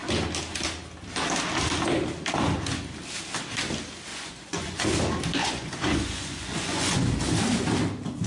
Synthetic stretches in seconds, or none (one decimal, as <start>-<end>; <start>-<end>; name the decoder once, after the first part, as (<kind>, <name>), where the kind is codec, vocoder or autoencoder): 4.1-4.8 (vocoder, Vocos); 5.4-7.1